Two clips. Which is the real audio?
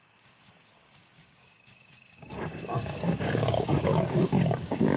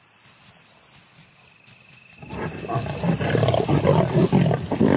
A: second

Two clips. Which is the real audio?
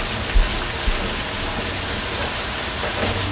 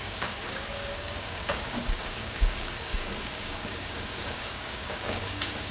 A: first